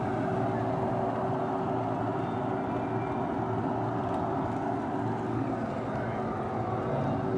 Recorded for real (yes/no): yes